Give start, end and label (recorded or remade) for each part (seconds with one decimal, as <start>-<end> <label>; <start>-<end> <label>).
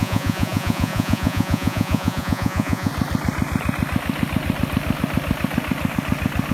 0.0-2.9 remade; 2.9-6.5 recorded